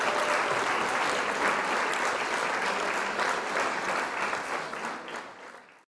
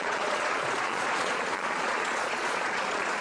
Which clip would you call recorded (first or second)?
first